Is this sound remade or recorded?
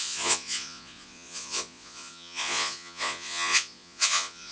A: remade